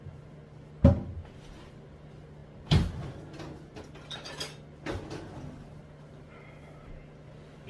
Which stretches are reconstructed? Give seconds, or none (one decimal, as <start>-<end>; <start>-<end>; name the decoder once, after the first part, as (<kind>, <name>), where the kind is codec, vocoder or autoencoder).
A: none